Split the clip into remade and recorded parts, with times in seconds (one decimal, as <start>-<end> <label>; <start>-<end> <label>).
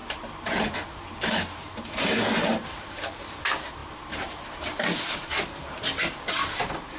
0.0-7.0 remade